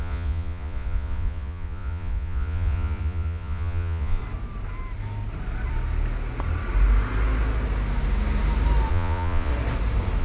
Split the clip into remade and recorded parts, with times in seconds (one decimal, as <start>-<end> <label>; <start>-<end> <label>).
0.0-4.2 remade; 4.2-8.9 recorded; 8.9-9.5 remade; 9.5-10.2 recorded